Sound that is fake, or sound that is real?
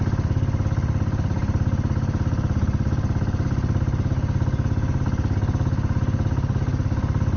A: real